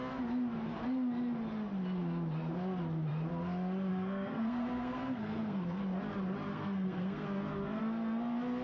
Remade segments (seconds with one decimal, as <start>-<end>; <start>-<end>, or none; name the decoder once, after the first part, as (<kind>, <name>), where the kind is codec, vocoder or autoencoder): 3.9-5.8 (codec, SNAC); 6.5-7.8